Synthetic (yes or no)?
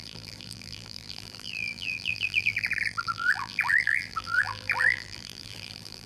yes